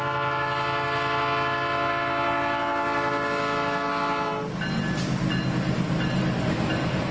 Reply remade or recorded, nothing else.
recorded